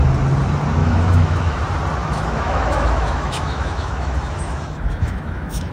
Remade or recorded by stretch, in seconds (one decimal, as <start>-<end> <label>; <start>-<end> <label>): 0.0-0.8 recorded; 0.8-1.6 remade; 1.6-2.0 recorded; 2.0-5.7 remade